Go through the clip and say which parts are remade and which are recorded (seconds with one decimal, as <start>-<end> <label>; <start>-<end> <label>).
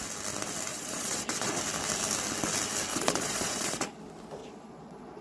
0.0-0.7 recorded; 0.7-1.6 remade; 1.6-2.9 recorded; 2.9-4.0 remade; 4.0-4.4 recorded; 4.4-5.2 remade